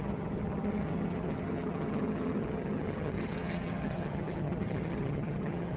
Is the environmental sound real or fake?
fake